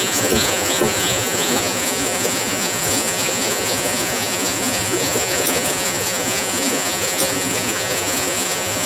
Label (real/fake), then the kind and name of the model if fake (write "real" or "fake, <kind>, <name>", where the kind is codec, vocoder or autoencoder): fake, vocoder, Vocos